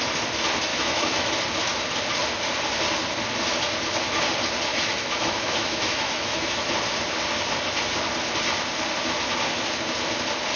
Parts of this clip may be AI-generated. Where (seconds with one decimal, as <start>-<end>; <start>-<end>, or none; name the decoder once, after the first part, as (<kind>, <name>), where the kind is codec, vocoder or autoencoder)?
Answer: 0.7-1.3 (autoencoder, DAC-VAE); 4.7-6.7